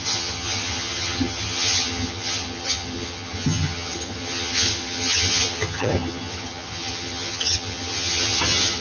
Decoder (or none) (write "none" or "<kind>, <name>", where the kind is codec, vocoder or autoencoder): vocoder, HiFi-GAN